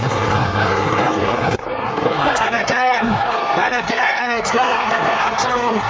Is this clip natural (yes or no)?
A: no